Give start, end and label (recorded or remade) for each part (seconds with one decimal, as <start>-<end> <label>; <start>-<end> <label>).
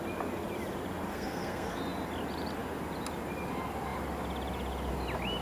0.0-1.1 recorded; 1.1-1.8 remade; 1.8-5.4 recorded